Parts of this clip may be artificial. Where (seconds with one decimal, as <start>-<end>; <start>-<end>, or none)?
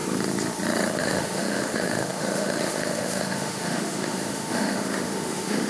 1.0-5.7